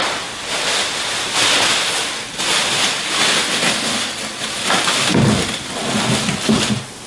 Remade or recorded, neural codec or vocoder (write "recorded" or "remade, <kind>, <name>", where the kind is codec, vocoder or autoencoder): recorded